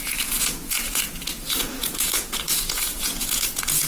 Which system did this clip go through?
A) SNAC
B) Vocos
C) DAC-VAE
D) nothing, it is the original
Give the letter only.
B